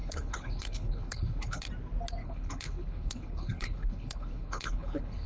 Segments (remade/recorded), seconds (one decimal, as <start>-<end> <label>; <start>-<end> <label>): 0.0-1.7 remade; 1.7-2.2 recorded; 2.2-5.3 remade